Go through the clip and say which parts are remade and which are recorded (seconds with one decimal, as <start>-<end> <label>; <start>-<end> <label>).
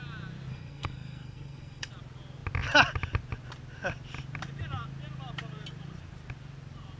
0.0-0.5 recorded; 0.5-1.9 remade; 1.9-7.0 recorded